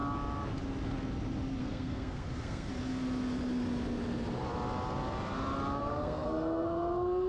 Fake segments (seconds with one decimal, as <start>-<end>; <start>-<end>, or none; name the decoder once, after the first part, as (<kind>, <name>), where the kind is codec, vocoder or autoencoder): 1.6-2.7 (codec, SNAC); 5.8-7.3